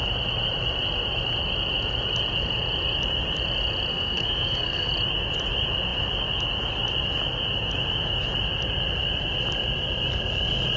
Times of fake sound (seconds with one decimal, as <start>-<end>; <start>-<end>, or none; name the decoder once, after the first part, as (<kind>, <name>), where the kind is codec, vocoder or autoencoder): 3.9-4.9 (codec, SNAC)